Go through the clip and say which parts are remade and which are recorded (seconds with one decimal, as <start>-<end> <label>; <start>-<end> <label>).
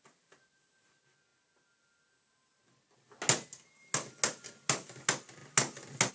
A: 0.0-6.1 recorded